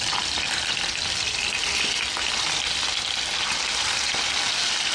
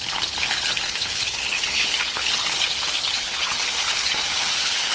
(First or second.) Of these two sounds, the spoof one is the second